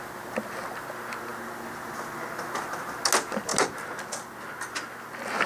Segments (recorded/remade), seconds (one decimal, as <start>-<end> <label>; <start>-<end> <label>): 0.0-5.5 recorded